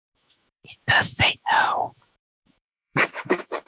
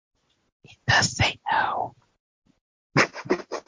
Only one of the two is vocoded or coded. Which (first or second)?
first